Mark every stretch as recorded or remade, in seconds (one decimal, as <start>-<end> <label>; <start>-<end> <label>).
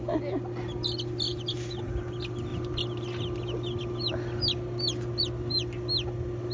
0.0-6.5 recorded